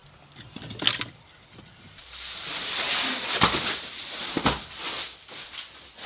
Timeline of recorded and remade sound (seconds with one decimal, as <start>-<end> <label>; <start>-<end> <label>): 0.0-6.1 recorded